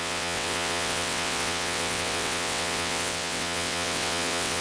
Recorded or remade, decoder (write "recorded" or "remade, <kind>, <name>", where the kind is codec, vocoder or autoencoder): remade, vocoder, WaveNeXt